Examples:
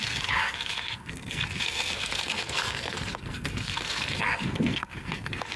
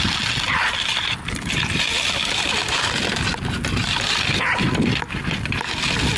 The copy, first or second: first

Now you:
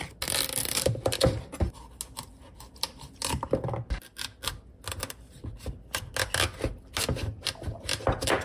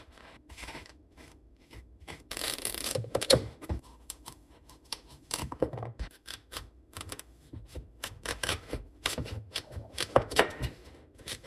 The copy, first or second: second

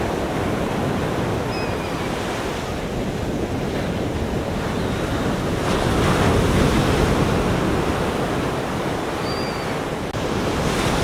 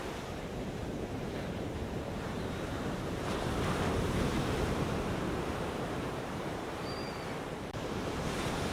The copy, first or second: second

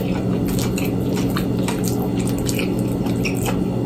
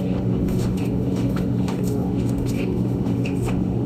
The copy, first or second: second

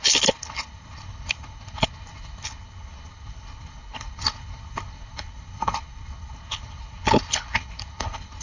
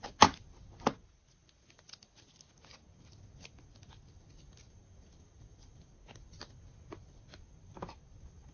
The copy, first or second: first